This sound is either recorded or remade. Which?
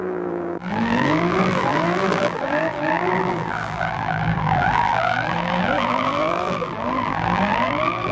remade